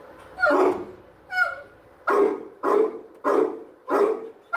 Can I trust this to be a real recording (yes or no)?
yes